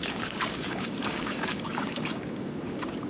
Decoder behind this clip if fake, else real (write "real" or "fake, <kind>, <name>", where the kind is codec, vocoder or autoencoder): fake, codec, DAC